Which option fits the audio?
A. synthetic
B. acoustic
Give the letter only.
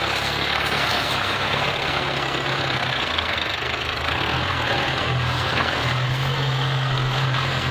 A